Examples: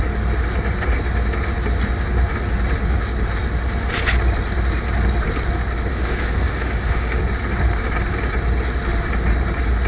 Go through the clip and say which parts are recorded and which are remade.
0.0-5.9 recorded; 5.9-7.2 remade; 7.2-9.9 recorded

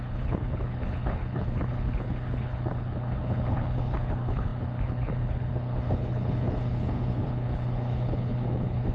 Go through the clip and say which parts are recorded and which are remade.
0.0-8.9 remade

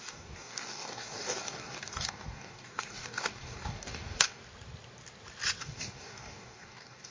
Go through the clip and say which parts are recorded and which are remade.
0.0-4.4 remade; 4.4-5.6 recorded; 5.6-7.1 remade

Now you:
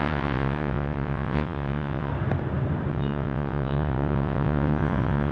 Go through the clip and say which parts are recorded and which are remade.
0.0-2.1 remade; 2.1-2.9 recorded; 2.9-5.3 remade

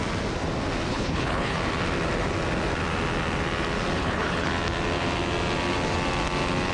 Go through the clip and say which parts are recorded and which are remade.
0.0-0.9 recorded; 0.9-1.6 remade; 1.6-4.0 recorded; 4.0-4.5 remade; 4.5-6.7 recorded